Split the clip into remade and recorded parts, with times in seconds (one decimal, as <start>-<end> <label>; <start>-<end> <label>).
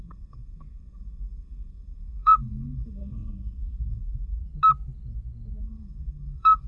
0.0-4.4 remade; 4.4-5.6 recorded; 5.6-6.7 remade